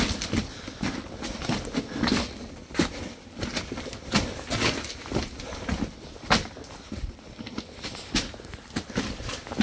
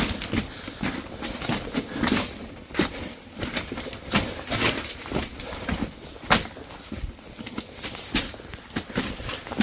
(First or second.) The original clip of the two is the first